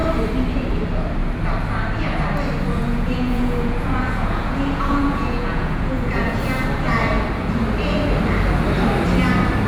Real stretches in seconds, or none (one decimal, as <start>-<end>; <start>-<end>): 0.0-2.8; 6.4-9.7